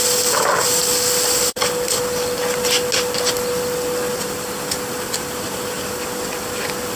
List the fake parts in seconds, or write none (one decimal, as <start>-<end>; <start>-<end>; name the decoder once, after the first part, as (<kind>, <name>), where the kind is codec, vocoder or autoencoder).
none